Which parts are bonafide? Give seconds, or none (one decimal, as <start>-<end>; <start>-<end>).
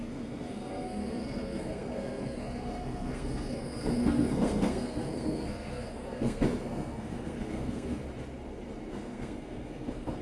8.0-8.9